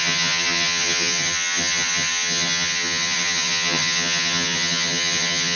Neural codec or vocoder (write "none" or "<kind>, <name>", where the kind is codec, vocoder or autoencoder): vocoder, HiFi-GAN